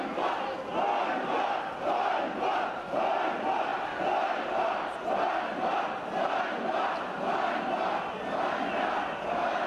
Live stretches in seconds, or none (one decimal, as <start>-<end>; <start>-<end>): 0.0-9.7